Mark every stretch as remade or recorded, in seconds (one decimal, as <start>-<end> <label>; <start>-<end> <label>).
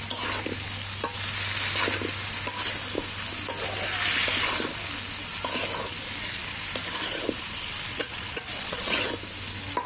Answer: 0.0-7.9 recorded; 7.9-9.1 remade; 9.1-9.9 recorded